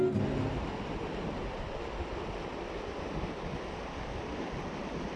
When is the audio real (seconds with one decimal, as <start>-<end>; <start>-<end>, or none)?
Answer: 0.0-5.2